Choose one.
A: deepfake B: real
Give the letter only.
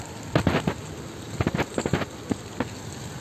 B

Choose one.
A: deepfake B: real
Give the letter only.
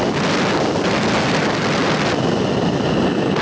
B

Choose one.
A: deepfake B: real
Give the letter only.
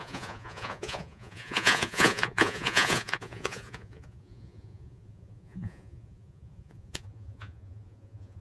A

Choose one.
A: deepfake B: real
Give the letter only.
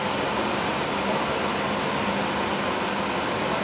B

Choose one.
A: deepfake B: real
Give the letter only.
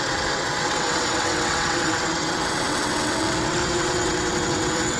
A